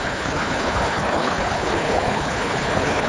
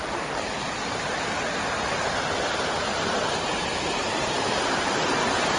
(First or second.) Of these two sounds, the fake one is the first